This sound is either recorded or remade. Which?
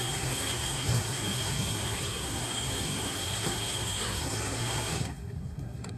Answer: remade